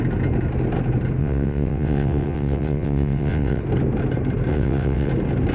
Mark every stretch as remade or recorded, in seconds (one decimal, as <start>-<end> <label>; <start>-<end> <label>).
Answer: 0.0-1.2 recorded; 1.2-3.6 remade; 3.6-4.5 recorded; 4.5-5.1 remade; 5.1-5.5 recorded